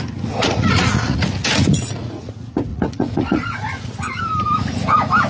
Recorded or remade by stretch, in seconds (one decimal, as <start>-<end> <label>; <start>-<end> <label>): 0.0-0.4 recorded; 0.4-2.3 remade; 2.3-2.7 recorded; 2.7-4.2 remade; 4.2-5.3 recorded